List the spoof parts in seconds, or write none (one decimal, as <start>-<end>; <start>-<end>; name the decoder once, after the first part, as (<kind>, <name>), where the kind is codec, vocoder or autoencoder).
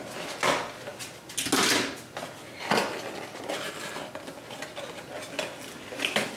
none